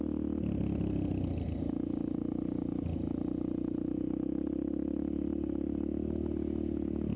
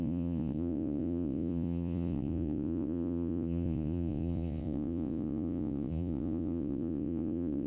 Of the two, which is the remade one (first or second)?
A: second